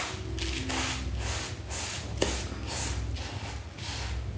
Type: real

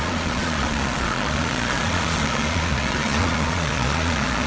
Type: fake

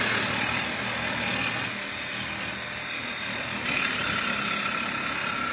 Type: real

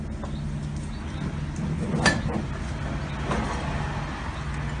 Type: real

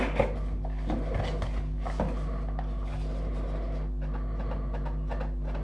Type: real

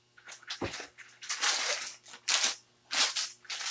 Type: real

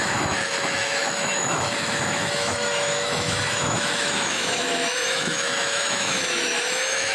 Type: fake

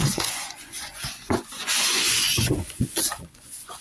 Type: fake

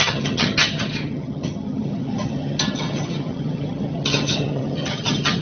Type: fake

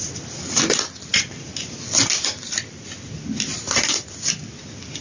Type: real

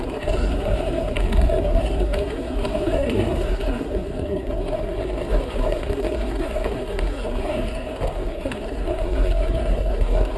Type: fake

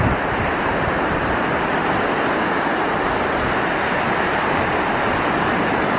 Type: real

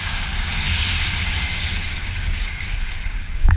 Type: fake